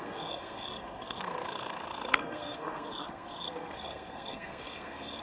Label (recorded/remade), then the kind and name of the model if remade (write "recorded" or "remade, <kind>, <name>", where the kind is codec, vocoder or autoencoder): remade, codec, SNAC